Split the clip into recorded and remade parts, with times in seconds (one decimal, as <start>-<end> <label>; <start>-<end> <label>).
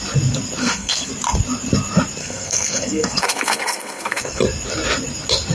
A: 0.0-0.6 recorded; 0.6-1.1 remade; 1.1-2.2 recorded; 2.2-4.4 remade; 4.4-5.5 recorded